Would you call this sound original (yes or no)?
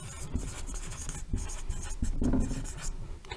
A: yes